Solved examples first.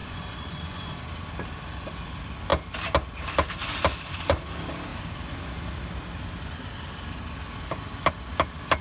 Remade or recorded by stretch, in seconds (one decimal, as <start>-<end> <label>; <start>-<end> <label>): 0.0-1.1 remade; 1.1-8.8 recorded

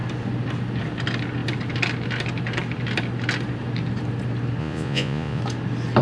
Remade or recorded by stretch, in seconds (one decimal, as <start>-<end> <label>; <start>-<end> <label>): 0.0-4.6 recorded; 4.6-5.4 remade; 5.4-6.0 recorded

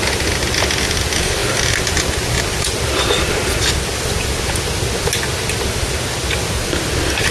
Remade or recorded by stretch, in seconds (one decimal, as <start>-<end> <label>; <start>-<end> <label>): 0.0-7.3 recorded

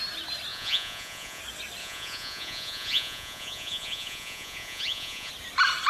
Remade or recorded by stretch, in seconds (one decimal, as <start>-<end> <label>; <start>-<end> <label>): 0.0-0.5 recorded; 0.5-1.4 remade; 1.4-1.8 recorded; 1.8-5.3 remade; 5.3-5.9 recorded